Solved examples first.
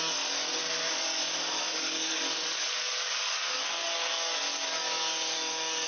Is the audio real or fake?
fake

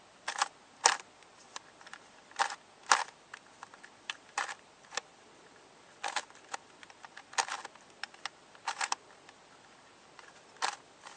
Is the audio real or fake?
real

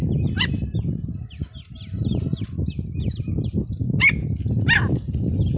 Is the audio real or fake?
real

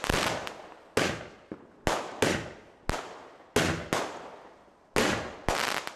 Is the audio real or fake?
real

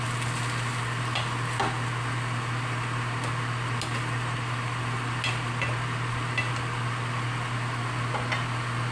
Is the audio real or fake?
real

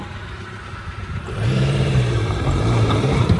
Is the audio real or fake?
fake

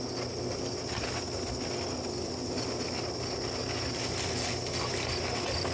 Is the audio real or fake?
real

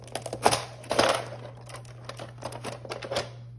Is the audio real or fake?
real